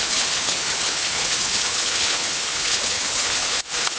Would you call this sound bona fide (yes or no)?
no